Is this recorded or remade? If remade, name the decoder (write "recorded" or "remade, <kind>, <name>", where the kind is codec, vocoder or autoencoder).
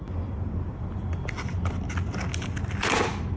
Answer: recorded